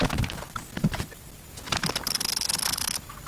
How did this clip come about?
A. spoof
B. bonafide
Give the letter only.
B